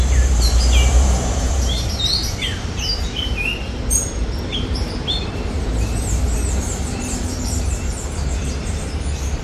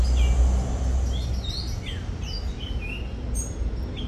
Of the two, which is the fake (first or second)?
first